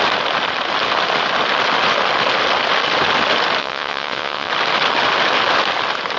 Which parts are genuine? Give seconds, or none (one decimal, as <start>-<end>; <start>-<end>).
0.0-3.6; 4.5-6.2